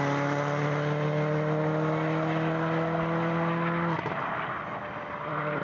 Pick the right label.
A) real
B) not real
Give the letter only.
A